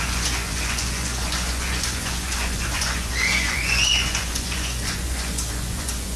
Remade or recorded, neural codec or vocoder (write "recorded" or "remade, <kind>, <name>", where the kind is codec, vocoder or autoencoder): remade, vocoder, Vocos